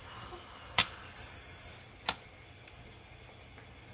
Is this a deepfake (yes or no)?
no